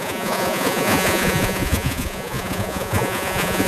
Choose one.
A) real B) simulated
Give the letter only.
B